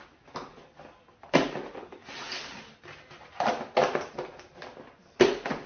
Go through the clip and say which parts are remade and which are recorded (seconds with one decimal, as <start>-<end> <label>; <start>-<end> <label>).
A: 0.0-5.7 recorded